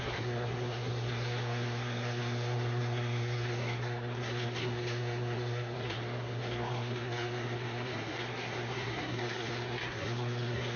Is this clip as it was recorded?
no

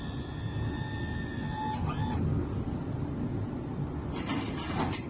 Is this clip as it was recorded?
yes